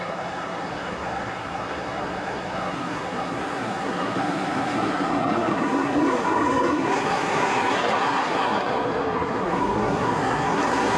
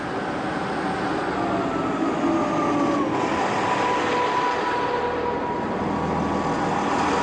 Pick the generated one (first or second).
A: first